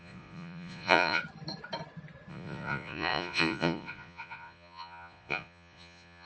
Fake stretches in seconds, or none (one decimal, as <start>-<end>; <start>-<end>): 0.0-1.2; 2.3-6.3

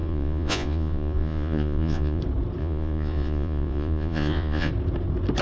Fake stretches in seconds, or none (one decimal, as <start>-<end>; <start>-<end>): 0.0-2.2; 2.6-4.7

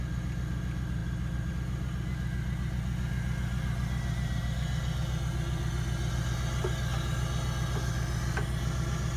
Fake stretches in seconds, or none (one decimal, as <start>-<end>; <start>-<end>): none

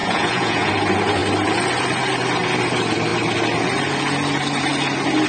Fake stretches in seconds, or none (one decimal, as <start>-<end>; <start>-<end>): 0.0-0.7

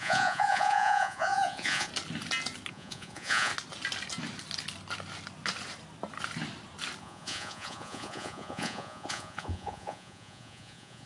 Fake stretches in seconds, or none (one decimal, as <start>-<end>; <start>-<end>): 0.0-1.9; 2.7-3.5; 7.0-11.1

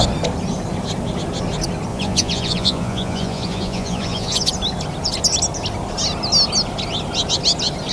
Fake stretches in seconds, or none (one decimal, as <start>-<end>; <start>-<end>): 1.9-4.5

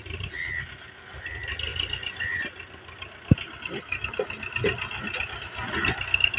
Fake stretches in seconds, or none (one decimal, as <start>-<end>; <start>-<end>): none